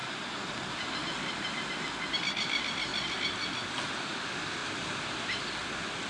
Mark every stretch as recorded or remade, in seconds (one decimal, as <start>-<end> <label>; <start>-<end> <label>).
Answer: 0.0-6.1 recorded